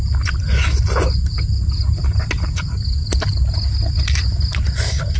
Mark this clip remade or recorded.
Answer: recorded